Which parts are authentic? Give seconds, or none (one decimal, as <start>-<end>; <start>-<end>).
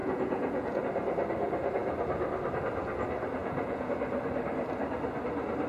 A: 0.8-3.4; 3.9-5.7